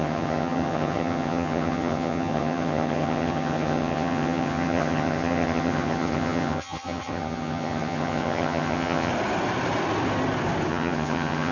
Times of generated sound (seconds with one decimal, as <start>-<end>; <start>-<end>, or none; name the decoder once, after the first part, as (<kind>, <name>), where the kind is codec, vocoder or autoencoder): 0.0-9.1 (vocoder, HiFi-GAN); 10.7-11.5